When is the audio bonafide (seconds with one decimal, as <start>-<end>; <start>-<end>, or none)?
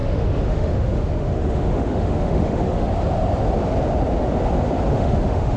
2.9-4.9